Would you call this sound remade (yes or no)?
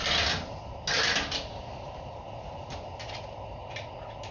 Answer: no